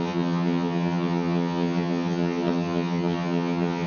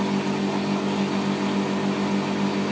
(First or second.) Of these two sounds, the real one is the second